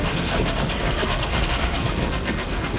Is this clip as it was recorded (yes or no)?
no